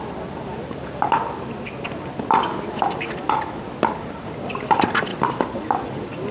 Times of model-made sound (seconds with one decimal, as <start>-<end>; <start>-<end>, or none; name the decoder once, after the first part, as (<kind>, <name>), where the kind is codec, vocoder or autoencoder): none